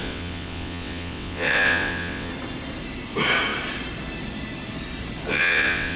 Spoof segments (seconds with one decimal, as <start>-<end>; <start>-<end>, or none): 0.0-2.3; 5.3-6.0